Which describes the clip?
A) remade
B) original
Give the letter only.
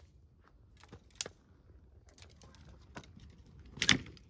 B